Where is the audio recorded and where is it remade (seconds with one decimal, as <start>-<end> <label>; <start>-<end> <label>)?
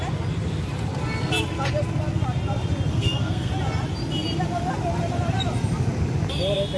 0.0-2.9 recorded; 2.9-3.5 remade; 3.5-6.8 recorded